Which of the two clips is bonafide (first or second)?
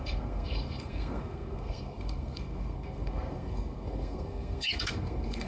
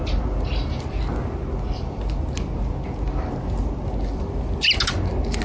second